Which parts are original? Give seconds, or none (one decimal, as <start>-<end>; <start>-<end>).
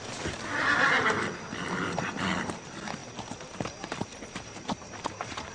0.0-3.0